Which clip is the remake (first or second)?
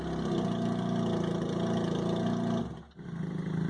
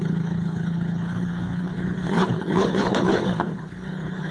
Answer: second